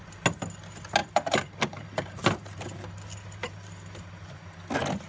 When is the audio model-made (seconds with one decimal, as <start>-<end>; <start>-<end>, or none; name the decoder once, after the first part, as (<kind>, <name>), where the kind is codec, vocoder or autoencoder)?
1.0-2.9 (vocoder, BigVGAN v2); 3.4-4.1